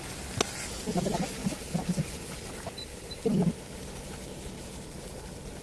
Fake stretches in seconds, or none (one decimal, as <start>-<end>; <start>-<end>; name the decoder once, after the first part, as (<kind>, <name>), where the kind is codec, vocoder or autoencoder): none